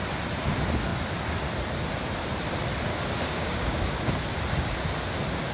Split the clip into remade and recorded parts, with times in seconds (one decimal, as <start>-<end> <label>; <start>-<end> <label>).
0.0-2.9 recorded; 2.9-4.2 remade; 4.2-5.5 recorded